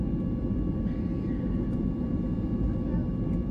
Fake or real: real